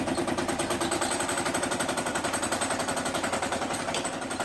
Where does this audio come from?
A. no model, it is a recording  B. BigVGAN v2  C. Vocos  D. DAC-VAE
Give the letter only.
B